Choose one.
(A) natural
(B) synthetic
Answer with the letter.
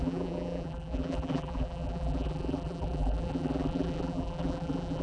B